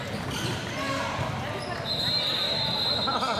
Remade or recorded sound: recorded